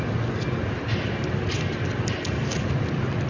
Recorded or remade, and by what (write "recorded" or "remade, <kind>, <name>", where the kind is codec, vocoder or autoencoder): recorded